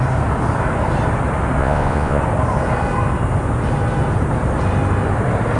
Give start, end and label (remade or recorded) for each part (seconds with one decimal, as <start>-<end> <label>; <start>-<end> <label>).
0.0-1.6 recorded; 1.6-2.2 remade; 2.2-5.6 recorded